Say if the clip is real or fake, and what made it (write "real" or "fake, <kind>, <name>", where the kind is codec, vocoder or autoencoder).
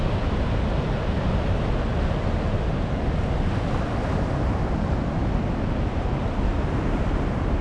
real